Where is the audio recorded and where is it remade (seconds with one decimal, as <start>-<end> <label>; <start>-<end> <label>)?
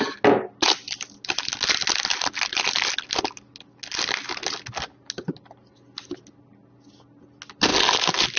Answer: 0.0-8.4 recorded